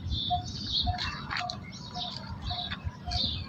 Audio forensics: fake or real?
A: real